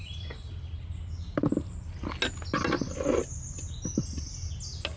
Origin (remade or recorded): recorded